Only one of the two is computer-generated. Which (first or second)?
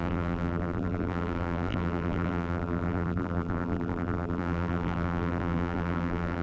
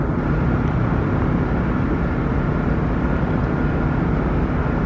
first